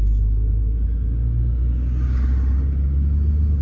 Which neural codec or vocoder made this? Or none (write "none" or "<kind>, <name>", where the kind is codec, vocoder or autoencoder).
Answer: none